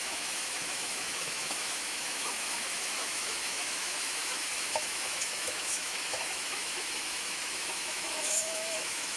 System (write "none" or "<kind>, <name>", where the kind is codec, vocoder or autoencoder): autoencoder, DAC-VAE